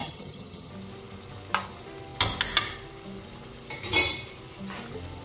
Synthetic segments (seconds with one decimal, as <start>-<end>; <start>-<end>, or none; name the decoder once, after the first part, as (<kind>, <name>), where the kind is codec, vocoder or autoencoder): 0.0-0.7 (vocoder, HiFi-GAN)